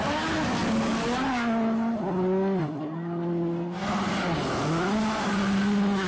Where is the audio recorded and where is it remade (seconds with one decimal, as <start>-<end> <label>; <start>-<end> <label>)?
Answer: 0.0-6.1 recorded